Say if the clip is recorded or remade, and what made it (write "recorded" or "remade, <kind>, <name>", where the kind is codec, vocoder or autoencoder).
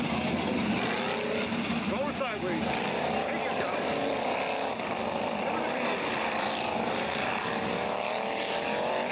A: recorded